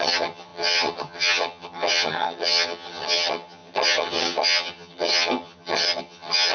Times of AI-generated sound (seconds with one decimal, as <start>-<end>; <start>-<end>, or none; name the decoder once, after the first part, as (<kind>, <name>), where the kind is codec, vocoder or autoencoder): 0.0-6.5 (vocoder, HiFi-GAN)